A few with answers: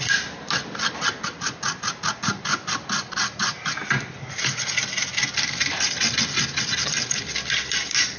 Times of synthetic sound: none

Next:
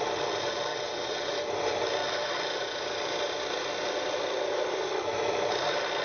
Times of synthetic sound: 0.7-1.3 (vocoder, WaveNeXt)

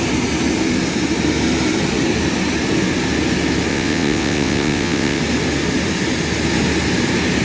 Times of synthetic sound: 3.7-5.2 (vocoder, WaveNeXt)

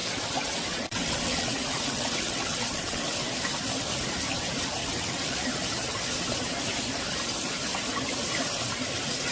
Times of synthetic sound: 0.0-3.3 (vocoder, WaveNeXt); 4.8-5.4

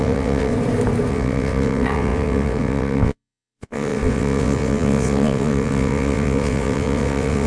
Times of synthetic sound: 0.0-0.5 (vocoder, WaveNeXt); 1.1-7.5

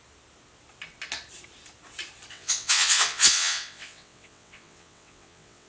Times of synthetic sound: 2.3-5.7 (vocoder, WaveNeXt)